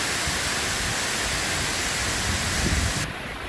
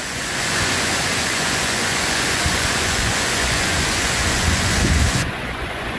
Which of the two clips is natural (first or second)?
first